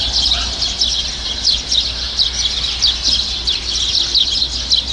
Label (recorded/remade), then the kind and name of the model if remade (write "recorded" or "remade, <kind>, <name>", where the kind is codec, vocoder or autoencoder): recorded